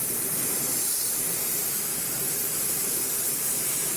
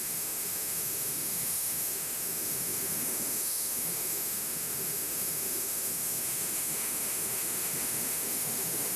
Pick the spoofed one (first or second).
second